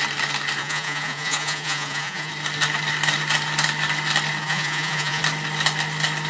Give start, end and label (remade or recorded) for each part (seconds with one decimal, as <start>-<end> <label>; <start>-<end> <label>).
0.0-0.6 recorded; 0.6-2.3 remade; 2.3-4.4 recorded; 4.4-5.2 remade; 5.2-6.3 recorded